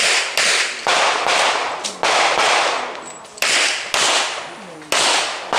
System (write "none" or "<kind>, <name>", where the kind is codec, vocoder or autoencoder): none